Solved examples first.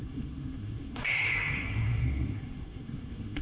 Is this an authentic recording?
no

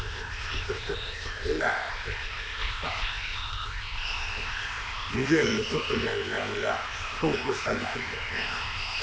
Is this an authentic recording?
no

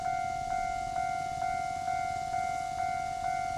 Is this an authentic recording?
yes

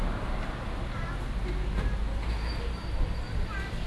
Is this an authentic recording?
yes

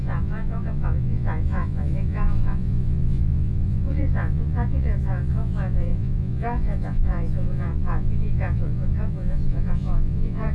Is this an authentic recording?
no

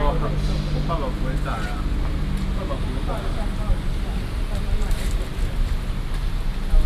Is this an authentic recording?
yes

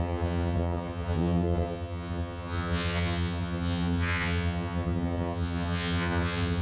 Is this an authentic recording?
no